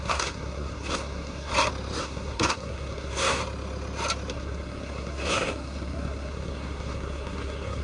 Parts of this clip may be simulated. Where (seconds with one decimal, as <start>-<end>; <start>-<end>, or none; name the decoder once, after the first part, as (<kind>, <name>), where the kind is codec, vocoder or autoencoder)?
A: 0.0-1.5 (codec, SNAC); 2.0-3.4; 4.3-7.8